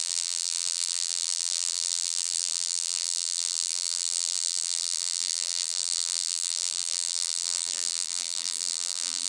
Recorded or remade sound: remade